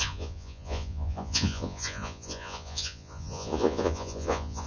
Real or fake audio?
fake